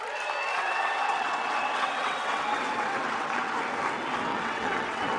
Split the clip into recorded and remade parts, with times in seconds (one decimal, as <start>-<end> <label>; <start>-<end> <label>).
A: 0.0-0.5 recorded; 0.5-3.6 remade; 3.6-4.3 recorded; 4.3-5.2 remade